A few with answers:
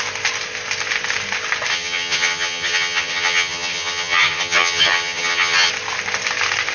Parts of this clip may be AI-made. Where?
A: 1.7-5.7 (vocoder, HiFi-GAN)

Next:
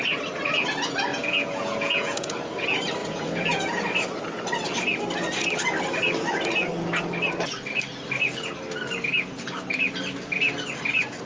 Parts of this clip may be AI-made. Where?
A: 1.1-2.4 (vocoder, Vocos); 3.0-3.8

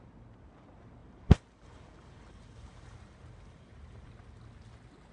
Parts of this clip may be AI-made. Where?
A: 1.0-4.1 (vocoder, BigVGAN v2)

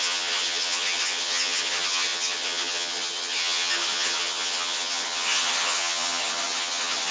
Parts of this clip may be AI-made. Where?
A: 0.0-7.1 (vocoder, HiFi-GAN)

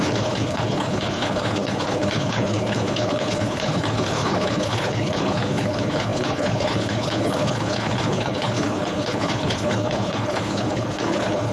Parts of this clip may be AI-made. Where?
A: 0.0-11.5 (codec, HILCodec)

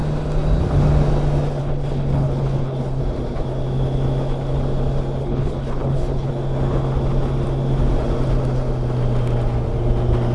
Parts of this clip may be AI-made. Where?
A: 1.6-3.0 (codec, HILCodec); 5.2-6.3

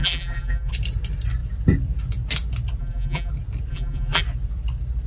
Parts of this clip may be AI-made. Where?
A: 0.0-0.7 (vocoder, BigVGAN v2); 2.8-3.3; 3.7-4.2

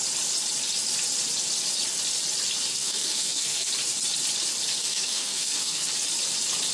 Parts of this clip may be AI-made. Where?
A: 2.7-3.7 (codec, SNAC); 4.8-5.9